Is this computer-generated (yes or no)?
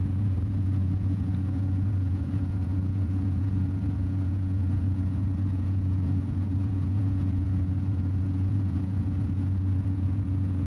yes